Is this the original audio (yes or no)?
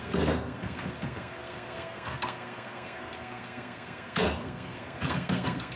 no